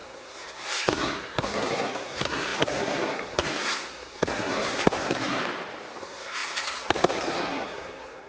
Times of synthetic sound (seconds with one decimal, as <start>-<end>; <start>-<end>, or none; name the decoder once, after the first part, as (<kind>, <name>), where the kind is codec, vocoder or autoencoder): 0.0-5.4 (codec, SNAC); 6.0-8.3